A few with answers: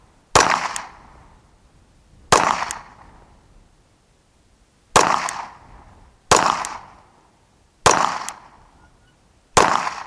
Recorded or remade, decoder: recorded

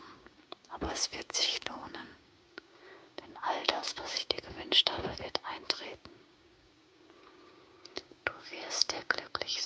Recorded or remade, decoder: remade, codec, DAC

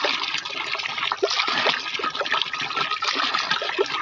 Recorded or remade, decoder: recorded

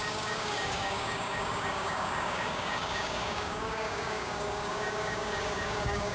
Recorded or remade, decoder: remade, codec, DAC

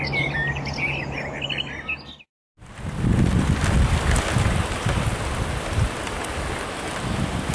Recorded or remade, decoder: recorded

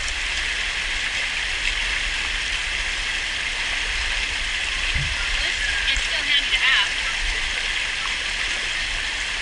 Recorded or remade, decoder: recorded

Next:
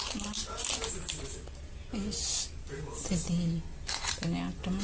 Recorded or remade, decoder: recorded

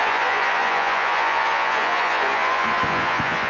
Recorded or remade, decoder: remade, vocoder, Vocos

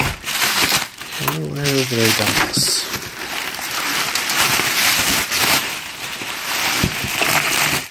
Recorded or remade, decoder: remade, vocoder, BigVGAN v2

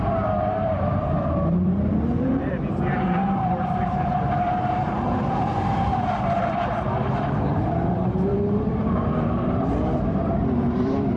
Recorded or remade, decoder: remade, vocoder, BigVGAN v2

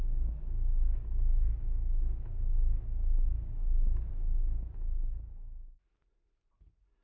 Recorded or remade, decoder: recorded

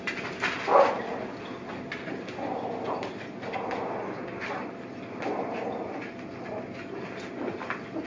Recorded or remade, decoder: recorded